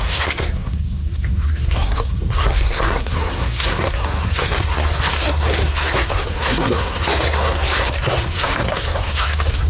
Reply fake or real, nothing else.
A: fake